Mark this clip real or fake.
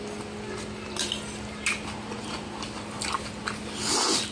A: real